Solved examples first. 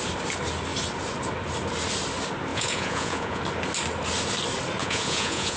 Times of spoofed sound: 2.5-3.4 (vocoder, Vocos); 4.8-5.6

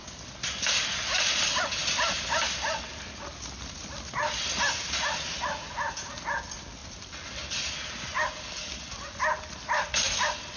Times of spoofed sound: none

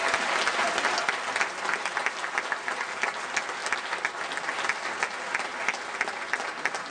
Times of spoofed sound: none

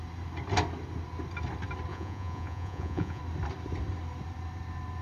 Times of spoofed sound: 1.9-3.2 (vocoder, Vocos)